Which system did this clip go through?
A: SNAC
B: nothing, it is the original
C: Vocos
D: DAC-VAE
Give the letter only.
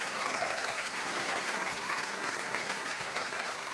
A